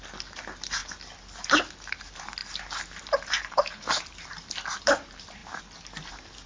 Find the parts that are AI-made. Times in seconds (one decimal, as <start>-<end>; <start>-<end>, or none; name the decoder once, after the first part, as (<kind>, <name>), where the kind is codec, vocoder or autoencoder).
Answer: 3.4-4.0 (codec, HILCodec)